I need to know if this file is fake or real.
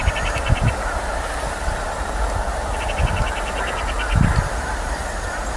real